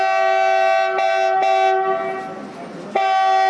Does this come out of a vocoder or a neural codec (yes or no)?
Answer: no